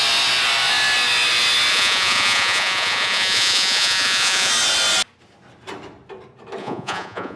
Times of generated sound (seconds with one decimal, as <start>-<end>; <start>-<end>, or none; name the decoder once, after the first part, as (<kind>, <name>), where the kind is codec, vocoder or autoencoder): 1.7-4.5 (vocoder, Vocos); 6.6-7.4

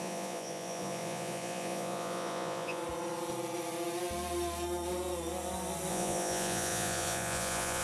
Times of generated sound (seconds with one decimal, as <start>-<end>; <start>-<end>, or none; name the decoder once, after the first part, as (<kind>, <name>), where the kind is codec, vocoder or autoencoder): 0.0-2.8 (vocoder, Vocos); 5.9-7.8

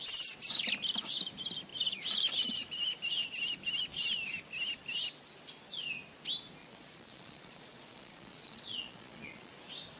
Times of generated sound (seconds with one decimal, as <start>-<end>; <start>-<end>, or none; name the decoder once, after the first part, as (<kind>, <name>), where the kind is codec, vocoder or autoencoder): 6.6-9.6 (vocoder, Vocos)

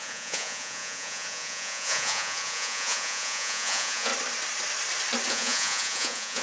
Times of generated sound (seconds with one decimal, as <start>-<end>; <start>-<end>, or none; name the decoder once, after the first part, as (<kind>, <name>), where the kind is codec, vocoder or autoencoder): 0.0-4.1 (vocoder, Vocos); 5.3-6.4

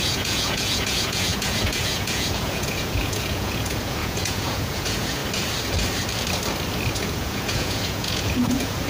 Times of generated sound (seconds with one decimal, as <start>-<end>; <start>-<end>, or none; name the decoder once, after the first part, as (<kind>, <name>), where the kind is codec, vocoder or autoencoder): 0.0-5.2 (vocoder, Vocos); 6.9-8.9

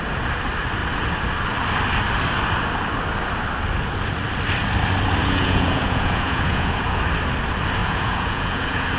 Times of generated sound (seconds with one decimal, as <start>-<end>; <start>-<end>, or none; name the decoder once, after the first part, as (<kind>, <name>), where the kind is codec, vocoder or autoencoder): 5.2-7.0 (vocoder, Vocos); 7.8-9.0

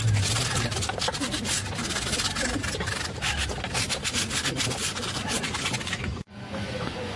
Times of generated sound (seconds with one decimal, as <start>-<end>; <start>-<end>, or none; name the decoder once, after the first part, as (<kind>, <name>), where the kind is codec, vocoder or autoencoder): 4.8-7.2 (vocoder, Vocos)

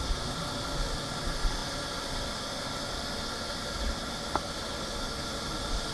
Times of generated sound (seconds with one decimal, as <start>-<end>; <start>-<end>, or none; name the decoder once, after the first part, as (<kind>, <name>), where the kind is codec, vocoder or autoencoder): none